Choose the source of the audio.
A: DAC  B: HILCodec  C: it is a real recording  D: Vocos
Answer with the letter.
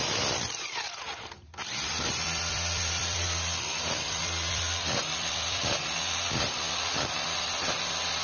C